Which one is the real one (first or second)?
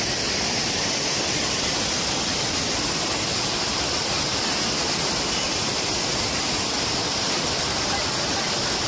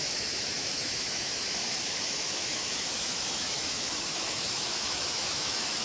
first